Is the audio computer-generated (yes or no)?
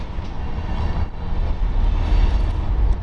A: no